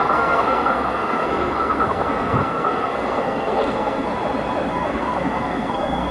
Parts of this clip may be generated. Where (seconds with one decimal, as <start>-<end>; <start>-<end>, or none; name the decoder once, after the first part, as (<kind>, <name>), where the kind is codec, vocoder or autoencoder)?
0.0-4.1 (codec, SNAC); 4.7-6.1